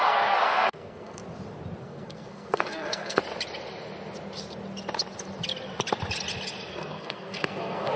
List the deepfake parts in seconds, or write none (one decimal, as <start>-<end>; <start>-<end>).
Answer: 0.0-1.2; 1.8-3.2; 6.7-8.0